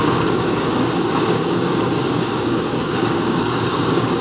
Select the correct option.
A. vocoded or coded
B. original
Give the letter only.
A